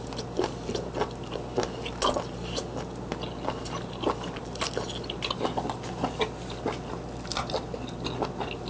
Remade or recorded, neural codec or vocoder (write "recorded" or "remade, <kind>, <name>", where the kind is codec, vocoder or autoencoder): recorded